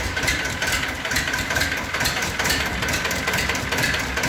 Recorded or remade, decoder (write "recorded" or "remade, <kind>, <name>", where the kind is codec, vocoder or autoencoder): remade, vocoder, BigVGAN v2